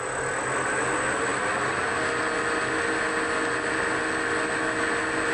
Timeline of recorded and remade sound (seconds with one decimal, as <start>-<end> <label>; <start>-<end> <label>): 0.0-5.3 recorded

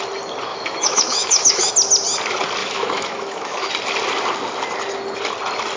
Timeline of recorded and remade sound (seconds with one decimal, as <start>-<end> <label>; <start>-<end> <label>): 0.0-0.5 recorded; 0.5-1.7 remade; 1.7-2.6 recorded; 2.6-3.7 remade; 3.7-5.8 recorded

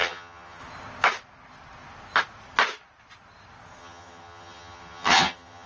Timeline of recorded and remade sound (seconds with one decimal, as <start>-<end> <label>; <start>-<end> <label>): 0.0-0.6 remade; 0.6-3.8 recorded; 3.8-5.7 remade

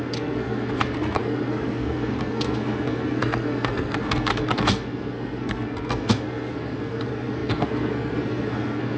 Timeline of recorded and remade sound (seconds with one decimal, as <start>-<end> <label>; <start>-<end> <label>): 0.0-9.0 remade

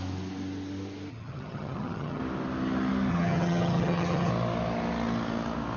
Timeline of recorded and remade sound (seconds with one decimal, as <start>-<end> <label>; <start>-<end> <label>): 0.0-1.1 recorded; 1.1-2.2 remade; 2.2-3.1 recorded; 3.1-4.3 remade; 4.3-5.8 recorded

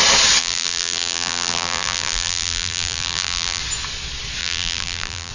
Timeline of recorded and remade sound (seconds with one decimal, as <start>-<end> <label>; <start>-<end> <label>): 0.0-0.4 recorded; 0.4-3.6 remade; 3.6-4.4 recorded; 4.4-5.3 remade